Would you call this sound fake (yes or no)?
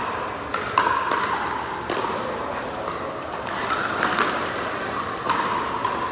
no